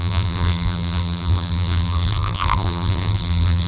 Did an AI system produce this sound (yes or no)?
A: yes